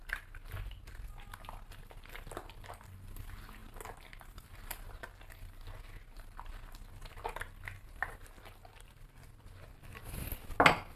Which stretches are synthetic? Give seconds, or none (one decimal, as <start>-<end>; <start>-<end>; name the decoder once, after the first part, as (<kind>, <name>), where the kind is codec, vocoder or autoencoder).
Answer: none